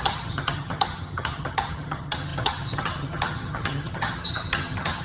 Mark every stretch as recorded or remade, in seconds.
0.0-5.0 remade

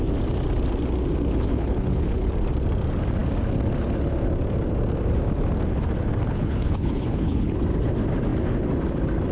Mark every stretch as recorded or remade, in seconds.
0.0-1.5 recorded; 1.5-2.3 remade; 2.3-6.3 recorded; 6.3-7.6 remade; 7.6-9.3 recorded

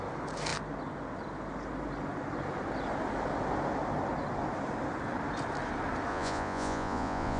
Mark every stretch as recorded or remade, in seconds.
0.0-6.1 recorded; 6.1-7.4 remade

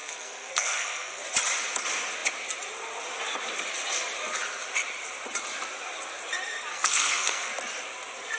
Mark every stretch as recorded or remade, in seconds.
0.0-1.2 remade; 1.2-6.7 recorded; 6.7-7.5 remade; 7.5-8.4 recorded

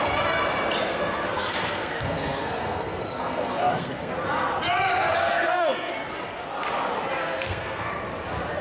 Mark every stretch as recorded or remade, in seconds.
0.0-0.9 recorded; 0.9-4.1 remade; 4.1-5.2 recorded; 5.2-5.9 remade; 5.9-7.2 recorded; 7.2-7.9 remade; 7.9-8.6 recorded

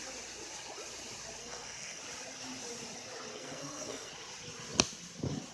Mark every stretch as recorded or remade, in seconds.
0.0-1.4 recorded; 1.4-2.0 remade; 2.0-3.3 recorded; 3.3-4.1 remade; 4.1-5.5 recorded

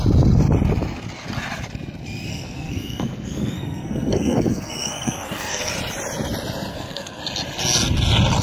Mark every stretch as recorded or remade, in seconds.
0.0-2.3 recorded; 2.3-5.7 remade; 5.7-6.7 recorded; 6.7-7.2 remade; 7.2-8.4 recorded

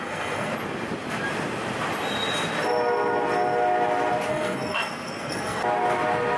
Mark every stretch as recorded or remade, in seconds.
0.0-0.5 remade; 0.5-4.3 recorded; 4.3-5.6 remade; 5.6-6.4 recorded